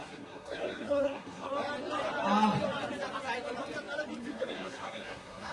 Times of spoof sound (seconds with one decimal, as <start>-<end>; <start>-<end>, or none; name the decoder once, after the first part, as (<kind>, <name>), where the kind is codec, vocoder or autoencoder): 0.0-1.5 (codec, SNAC); 4.2-5.5